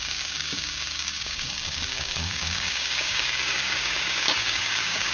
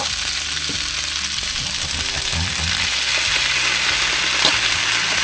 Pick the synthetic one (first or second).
first